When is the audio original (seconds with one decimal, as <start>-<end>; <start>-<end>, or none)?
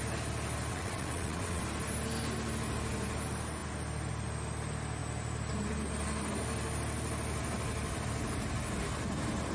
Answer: 0.0-0.7; 1.6-9.5